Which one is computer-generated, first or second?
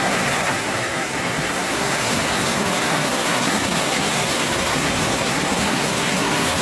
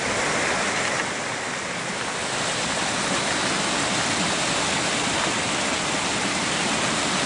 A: first